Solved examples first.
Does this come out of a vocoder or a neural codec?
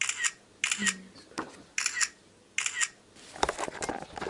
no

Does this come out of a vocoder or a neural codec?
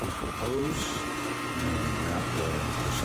yes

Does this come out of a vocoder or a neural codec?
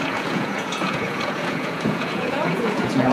yes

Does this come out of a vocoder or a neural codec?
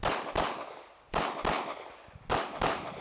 no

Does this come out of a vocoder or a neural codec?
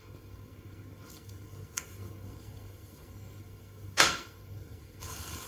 yes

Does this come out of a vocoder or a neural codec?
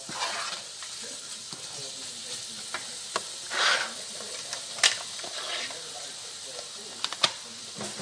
no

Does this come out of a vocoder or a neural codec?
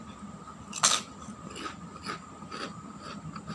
no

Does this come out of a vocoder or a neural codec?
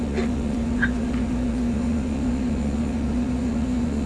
yes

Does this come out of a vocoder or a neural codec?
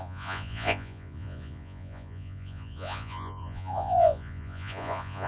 yes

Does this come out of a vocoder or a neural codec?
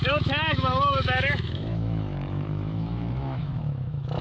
yes